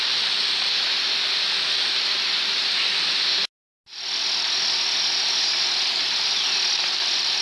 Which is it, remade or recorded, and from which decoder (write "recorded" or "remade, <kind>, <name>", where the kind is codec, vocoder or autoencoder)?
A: recorded